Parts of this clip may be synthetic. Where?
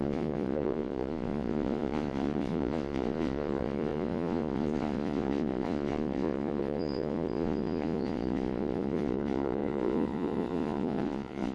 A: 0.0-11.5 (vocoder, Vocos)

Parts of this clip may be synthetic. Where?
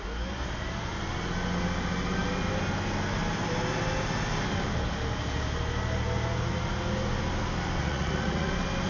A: 7.8-8.5 (vocoder, Vocos)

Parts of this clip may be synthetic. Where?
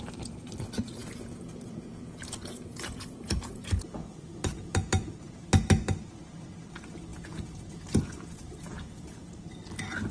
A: 1.0-5.1 (vocoder, Vocos); 7.1-9.4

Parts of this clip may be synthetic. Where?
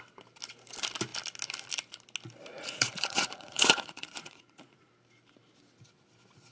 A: 2.5-4.9 (vocoder, Vocos)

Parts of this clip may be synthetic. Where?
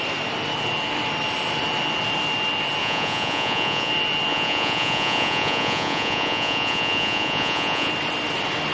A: 2.8-3.9 (vocoder, Vocos); 4.3-7.9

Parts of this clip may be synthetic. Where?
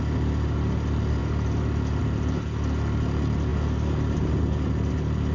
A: none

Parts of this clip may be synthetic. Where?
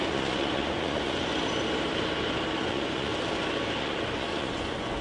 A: 0.0-1.3 (vocoder, Vocos); 2.6-3.1; 3.8-5.0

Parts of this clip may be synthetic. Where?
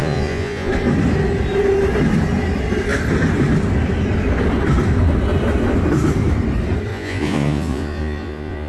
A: 0.0-0.7 (vocoder, Vocos); 6.9-8.7